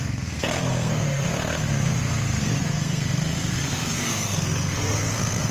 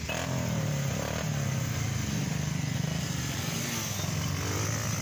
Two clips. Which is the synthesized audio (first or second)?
first